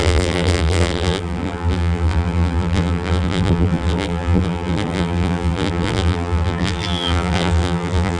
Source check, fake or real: fake